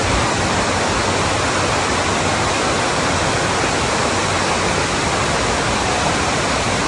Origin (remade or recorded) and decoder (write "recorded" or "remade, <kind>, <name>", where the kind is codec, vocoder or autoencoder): recorded